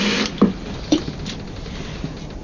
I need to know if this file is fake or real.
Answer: real